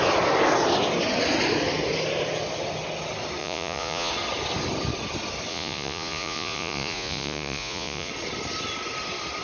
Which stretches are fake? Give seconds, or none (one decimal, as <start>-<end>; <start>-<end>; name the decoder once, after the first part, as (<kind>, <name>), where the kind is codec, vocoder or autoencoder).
3.4-4.1 (vocoder, Vocos); 5.5-8.1